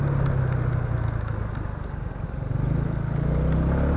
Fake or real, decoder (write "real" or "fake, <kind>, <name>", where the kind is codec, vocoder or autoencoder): real